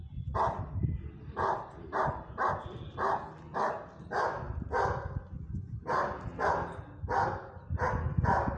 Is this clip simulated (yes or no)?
no